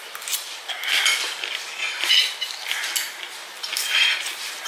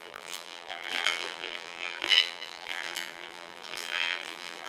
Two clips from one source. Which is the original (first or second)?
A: first